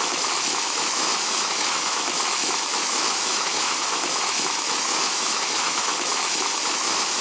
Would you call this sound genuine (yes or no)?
no